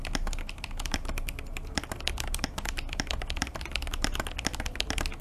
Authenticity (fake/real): real